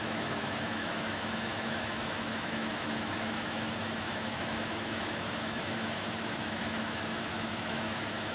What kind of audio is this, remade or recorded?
remade